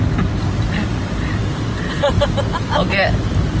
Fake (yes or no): no